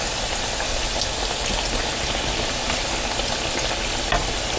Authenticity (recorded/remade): recorded